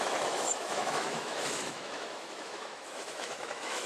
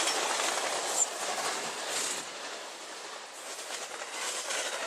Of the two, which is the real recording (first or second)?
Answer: second